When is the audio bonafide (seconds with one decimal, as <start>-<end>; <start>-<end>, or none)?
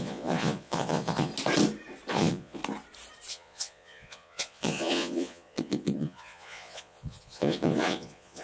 1.3-2.1; 2.6-3.3